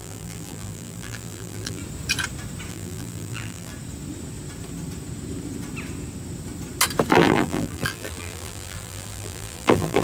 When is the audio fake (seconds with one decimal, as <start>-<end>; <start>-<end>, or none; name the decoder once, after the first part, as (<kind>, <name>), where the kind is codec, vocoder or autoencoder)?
0.0-1.8 (vocoder, BigVGAN v2); 2.7-3.7; 7.1-10.0